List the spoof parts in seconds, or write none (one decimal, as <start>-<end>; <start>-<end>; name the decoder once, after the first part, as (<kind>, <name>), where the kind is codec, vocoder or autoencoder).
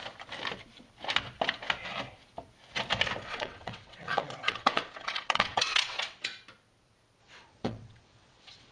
3.3-6.3 (vocoder, WaveNeXt); 7.2-8.7